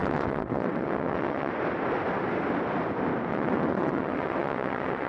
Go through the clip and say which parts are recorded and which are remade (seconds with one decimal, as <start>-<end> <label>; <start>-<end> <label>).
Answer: 0.0-1.5 remade; 1.5-3.3 recorded; 3.3-5.1 remade